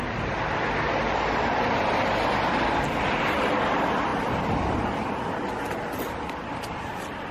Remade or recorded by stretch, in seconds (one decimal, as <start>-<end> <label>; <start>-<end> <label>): 0.0-7.3 recorded